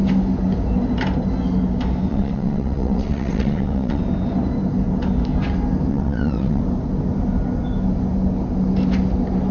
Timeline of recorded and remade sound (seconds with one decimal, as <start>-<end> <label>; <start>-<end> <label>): 0.0-2.1 recorded; 2.1-4.0 remade; 4.0-5.9 recorded; 5.9-6.6 remade; 6.6-9.5 recorded